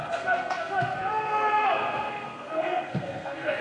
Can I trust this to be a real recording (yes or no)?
no